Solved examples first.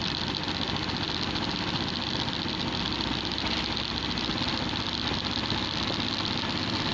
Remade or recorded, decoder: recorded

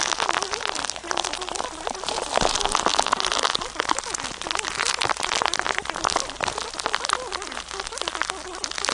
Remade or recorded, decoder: recorded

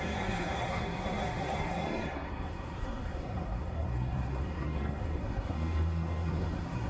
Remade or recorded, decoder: remade, codec, SNAC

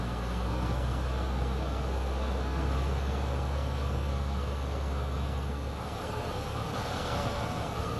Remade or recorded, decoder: remade, codec, SNAC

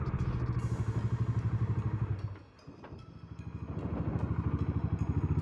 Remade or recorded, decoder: recorded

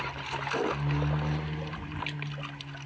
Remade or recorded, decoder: recorded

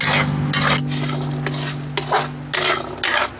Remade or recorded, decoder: recorded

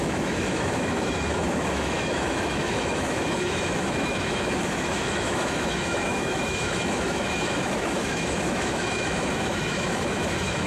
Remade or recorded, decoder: remade, autoencoder, DAC-VAE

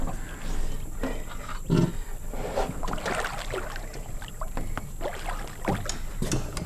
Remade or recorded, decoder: recorded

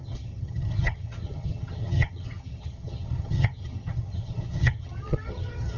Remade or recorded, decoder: remade, vocoder, HiFi-GAN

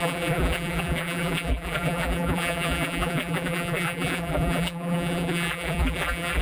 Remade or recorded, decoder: remade, vocoder, BigVGAN v2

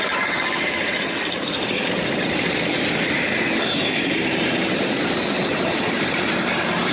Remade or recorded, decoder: remade, vocoder, BigVGAN v2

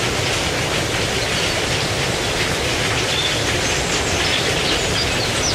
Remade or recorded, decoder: recorded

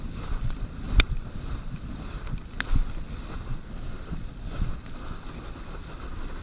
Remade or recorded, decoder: recorded